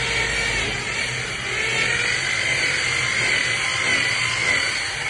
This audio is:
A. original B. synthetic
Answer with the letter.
A